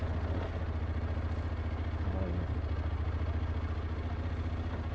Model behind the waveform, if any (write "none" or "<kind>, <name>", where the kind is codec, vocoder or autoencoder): none